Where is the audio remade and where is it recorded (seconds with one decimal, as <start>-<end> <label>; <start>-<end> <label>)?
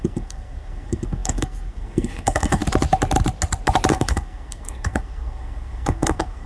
0.0-2.6 remade; 2.6-3.9 recorded; 3.9-6.5 remade